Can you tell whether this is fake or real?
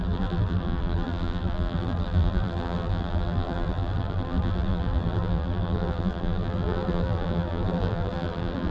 fake